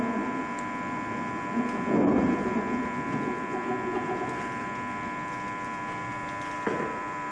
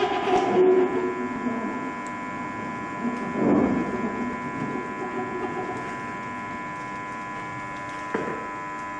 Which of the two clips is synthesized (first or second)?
first